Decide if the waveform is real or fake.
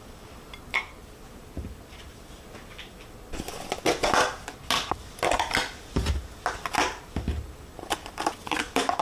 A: real